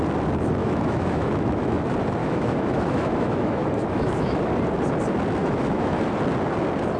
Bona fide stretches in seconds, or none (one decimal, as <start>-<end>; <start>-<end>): 0.0-0.6; 1.8-2.2; 4.5-5.4; 6.0-7.0